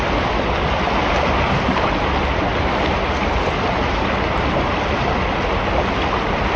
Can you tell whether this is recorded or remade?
recorded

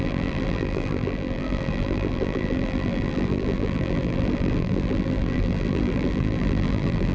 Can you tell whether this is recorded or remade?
remade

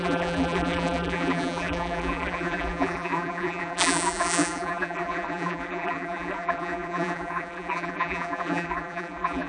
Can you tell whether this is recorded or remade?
remade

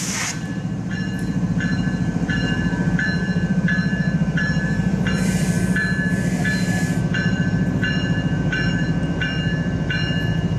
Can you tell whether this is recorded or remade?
remade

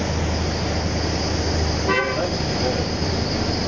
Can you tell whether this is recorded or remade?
recorded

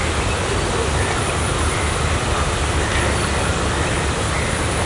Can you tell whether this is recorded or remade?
recorded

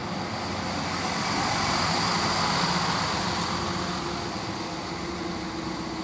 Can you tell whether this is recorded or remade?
recorded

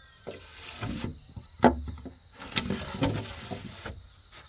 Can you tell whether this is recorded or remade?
recorded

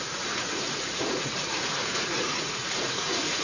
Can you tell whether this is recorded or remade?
remade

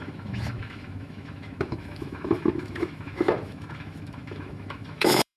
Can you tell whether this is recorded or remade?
remade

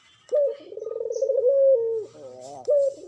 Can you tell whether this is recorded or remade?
recorded